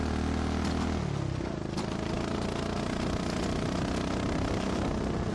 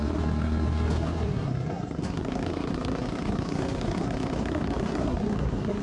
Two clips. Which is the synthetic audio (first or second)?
second